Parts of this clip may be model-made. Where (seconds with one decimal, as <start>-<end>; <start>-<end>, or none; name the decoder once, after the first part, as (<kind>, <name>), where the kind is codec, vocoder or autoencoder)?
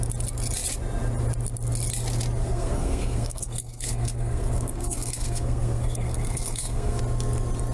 2.4-7.0 (codec, SNAC)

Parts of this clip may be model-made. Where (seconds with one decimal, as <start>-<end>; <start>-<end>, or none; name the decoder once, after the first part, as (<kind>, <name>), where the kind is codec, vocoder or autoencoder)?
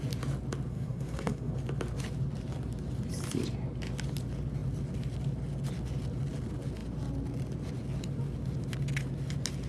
0.7-1.5 (codec, SNAC)